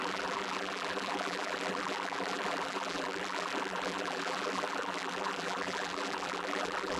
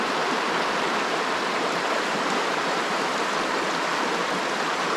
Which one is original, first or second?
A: second